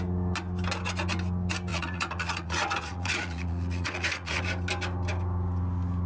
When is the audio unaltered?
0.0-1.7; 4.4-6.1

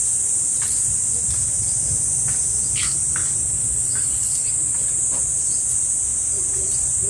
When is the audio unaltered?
0.0-6.1

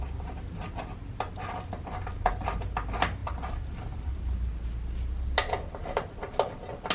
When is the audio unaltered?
0.0-6.9

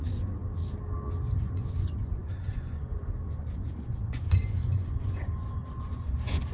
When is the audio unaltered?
0.4-1.4

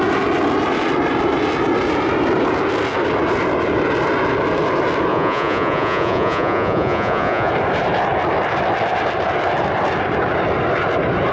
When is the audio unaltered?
0.0-5.1; 7.5-11.3

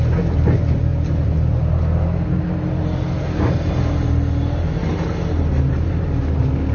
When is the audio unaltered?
0.0-6.7

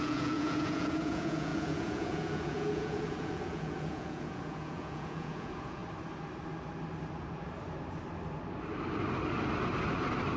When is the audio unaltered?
5.8-10.4

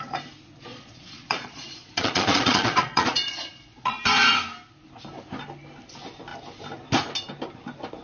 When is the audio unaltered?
0.0-0.7; 4.0-8.0